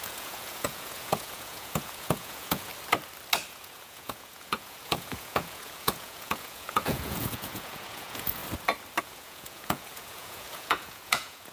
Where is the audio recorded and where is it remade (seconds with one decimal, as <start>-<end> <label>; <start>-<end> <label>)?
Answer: 0.0-2.7 remade; 2.7-3.5 recorded; 3.5-8.4 remade; 8.4-9.0 recorded; 9.0-11.5 remade